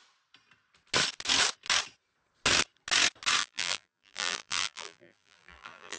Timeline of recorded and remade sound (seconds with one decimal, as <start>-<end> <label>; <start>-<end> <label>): 0.0-3.4 recorded; 3.4-6.0 remade